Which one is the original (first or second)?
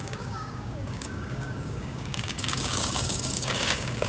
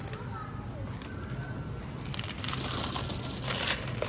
second